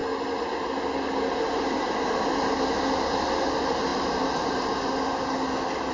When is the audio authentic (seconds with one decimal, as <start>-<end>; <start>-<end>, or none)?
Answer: 0.0-5.9

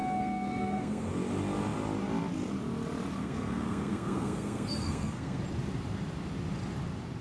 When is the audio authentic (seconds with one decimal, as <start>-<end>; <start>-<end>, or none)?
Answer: 1.1-3.2; 5.4-7.2